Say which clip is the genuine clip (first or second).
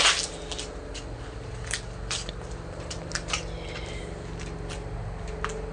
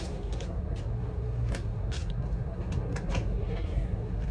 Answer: first